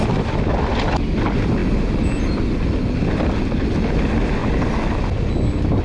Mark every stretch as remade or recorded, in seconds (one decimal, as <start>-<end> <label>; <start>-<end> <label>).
0.0-5.8 recorded